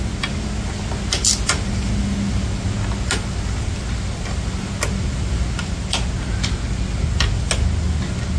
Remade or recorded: recorded